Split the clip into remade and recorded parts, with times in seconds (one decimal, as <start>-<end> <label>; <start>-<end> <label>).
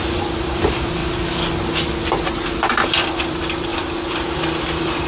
0.0-1.0 remade; 1.0-2.5 recorded; 2.5-5.1 remade